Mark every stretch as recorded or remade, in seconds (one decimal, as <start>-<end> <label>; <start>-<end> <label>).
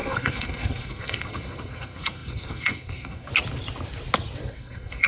0.0-3.3 remade; 3.3-4.5 recorded; 4.5-5.1 remade